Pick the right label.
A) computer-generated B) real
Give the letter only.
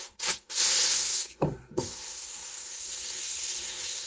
A